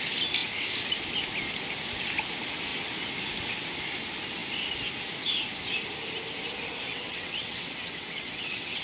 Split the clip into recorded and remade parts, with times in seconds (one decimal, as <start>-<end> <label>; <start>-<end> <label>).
0.0-6.9 recorded; 6.9-8.8 remade